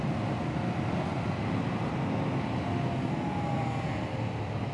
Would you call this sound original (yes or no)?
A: yes